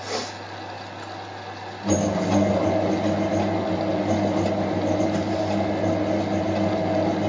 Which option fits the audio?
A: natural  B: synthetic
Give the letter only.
A